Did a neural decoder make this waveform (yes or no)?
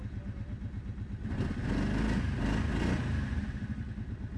no